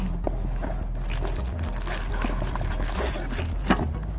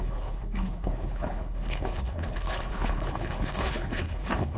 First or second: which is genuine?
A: first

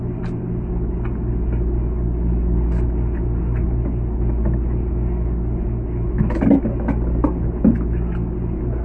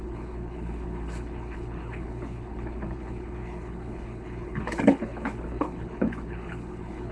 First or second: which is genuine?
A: first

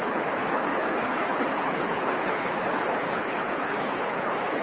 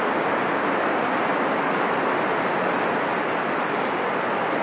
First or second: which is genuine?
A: second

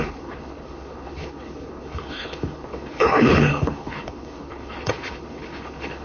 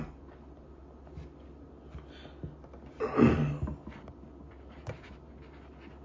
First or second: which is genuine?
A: second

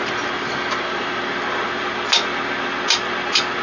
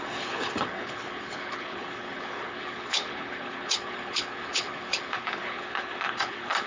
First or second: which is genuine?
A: first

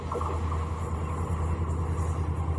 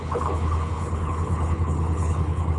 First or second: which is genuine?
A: first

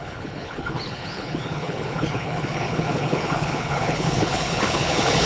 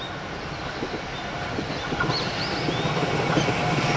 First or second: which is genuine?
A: second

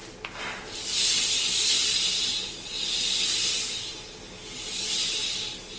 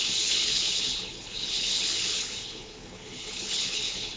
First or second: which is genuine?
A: first